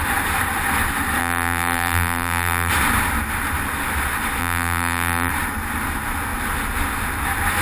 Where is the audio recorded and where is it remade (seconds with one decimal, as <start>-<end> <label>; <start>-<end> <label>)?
0.0-1.2 recorded; 1.2-2.7 remade; 2.7-4.4 recorded; 4.4-5.3 remade; 5.3-7.6 recorded